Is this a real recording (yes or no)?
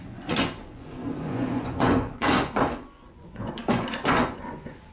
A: no